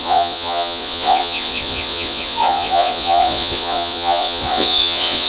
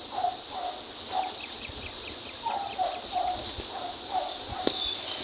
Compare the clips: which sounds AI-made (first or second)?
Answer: first